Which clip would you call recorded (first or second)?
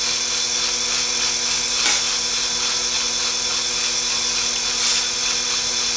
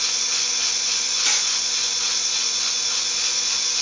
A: first